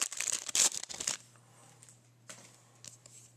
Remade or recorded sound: recorded